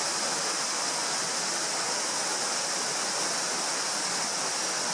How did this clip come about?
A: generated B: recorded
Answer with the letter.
B